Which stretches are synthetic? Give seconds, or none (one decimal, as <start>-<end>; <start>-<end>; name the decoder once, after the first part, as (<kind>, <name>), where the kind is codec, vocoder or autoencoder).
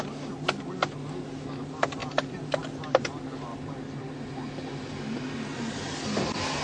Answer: 2.0-3.0 (vocoder, BigVGAN v2); 3.5-4.1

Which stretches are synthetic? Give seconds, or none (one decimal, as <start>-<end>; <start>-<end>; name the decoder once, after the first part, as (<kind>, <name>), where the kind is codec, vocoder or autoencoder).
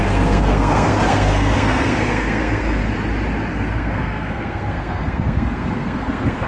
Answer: 0.0-2.8 (codec, SNAC); 3.5-6.5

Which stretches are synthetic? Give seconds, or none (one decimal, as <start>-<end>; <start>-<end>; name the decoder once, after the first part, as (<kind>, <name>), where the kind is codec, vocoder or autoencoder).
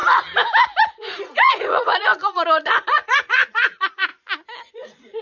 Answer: 0.8-4.1 (vocoder, Vocos); 4.7-5.2